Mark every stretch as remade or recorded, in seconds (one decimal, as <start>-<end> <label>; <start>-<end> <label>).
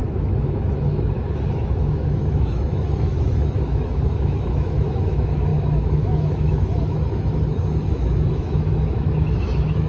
0.0-9.9 remade